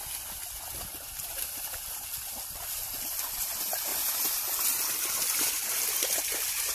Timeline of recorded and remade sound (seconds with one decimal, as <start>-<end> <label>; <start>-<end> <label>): 0.0-6.7 recorded